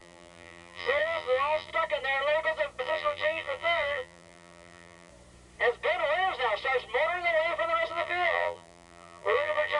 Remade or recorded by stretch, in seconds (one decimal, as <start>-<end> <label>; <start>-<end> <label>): 0.0-1.7 remade; 1.7-2.8 recorded; 2.8-5.1 remade; 5.1-7.9 recorded; 7.9-9.8 remade